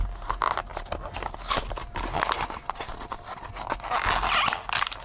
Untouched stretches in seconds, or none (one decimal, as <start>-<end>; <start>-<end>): 0.0-5.0